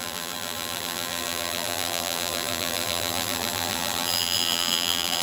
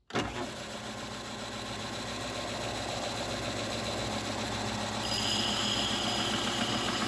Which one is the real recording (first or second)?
second